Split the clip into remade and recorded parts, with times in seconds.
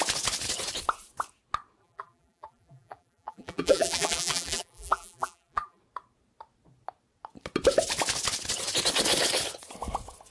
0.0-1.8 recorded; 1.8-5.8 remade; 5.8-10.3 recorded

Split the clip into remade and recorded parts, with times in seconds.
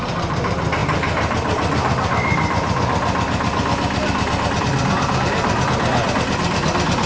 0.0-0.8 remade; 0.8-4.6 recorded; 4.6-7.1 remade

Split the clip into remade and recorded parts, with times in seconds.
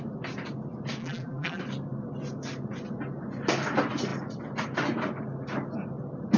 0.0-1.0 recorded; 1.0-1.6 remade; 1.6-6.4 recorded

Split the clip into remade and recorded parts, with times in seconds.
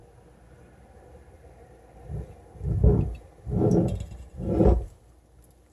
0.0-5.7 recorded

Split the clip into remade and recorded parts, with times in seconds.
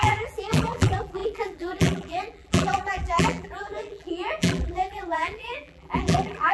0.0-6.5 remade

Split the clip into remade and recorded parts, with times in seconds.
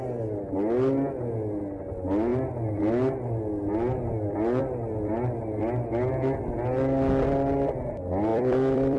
0.0-8.3 recorded; 8.3-9.0 remade